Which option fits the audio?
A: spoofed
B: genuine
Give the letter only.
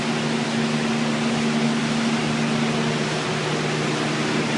B